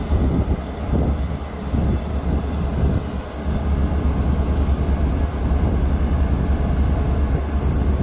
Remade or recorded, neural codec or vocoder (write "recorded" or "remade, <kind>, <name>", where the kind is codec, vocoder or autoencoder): recorded